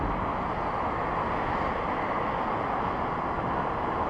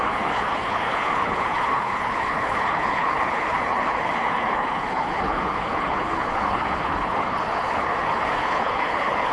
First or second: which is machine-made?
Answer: second